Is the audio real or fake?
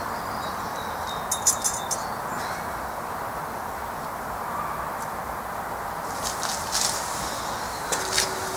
real